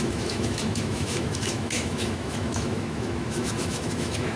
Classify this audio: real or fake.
fake